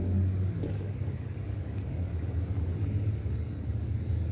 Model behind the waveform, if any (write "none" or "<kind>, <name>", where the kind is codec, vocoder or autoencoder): codec, DAC